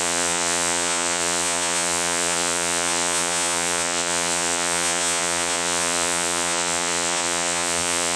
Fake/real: fake